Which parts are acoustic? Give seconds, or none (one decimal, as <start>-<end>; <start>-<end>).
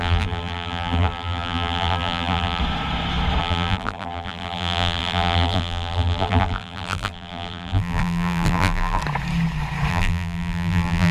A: 2.6-3.4; 9.0-9.9